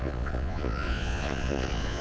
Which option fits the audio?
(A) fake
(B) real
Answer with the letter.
A